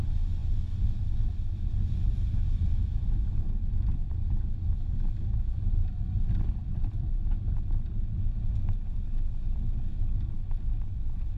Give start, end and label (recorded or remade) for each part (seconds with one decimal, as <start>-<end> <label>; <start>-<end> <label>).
0.0-6.6 recorded; 6.6-8.5 remade; 8.5-11.4 recorded